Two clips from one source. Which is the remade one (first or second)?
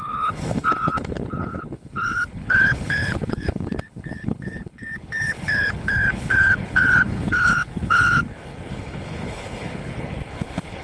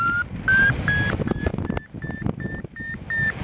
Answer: first